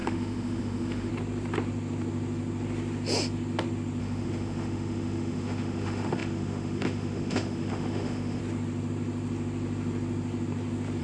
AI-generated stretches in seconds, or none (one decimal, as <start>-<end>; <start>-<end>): 0.0-1.1; 4.0-8.4

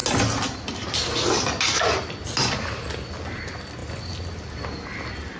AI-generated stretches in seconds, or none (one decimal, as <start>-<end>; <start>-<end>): none

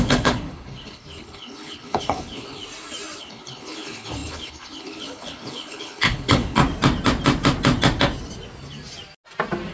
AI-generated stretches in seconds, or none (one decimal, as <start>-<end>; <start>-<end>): 0.0-2.6; 3.2-6.6